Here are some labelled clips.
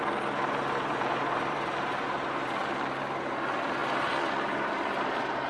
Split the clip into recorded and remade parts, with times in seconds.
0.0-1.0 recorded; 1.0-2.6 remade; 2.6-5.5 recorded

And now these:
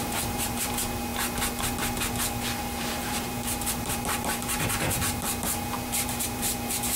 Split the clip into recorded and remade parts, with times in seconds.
0.0-1.1 remade; 1.1-2.6 recorded; 2.6-7.0 remade